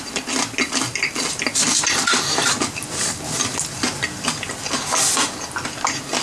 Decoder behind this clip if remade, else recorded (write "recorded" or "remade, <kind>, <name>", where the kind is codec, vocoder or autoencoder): recorded